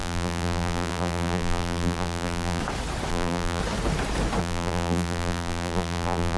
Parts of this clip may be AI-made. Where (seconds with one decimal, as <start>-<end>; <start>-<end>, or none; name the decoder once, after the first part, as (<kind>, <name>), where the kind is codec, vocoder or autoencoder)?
0.0-2.6 (vocoder, BigVGAN v2); 3.1-3.6; 4.4-6.4